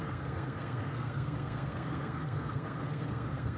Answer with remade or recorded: remade